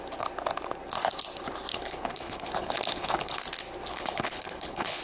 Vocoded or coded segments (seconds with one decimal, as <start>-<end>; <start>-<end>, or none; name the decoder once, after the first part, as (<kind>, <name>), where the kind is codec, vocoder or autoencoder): 1.7-3.4 (codec, HILCodec); 3.9-5.0